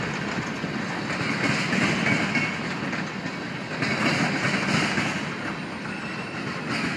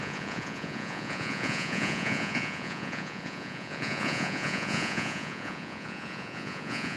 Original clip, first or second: first